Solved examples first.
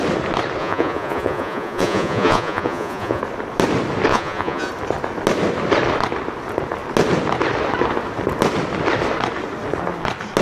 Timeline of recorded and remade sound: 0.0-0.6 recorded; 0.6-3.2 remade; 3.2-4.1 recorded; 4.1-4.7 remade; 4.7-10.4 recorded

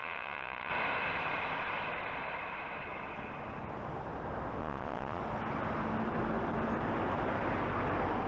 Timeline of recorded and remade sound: 0.0-0.7 remade; 0.7-4.6 recorded; 4.6-5.2 remade; 5.2-8.3 recorded

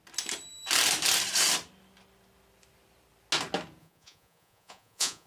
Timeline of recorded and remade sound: 0.0-3.8 recorded; 3.8-5.3 remade

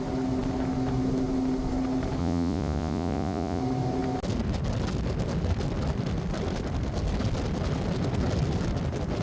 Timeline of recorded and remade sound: 0.0-2.2 recorded; 2.2-3.6 remade; 3.6-9.2 recorded